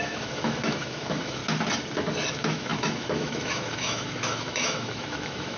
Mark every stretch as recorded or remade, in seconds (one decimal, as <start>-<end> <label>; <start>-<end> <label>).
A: 0.0-1.4 remade; 1.4-2.3 recorded; 2.3-5.6 remade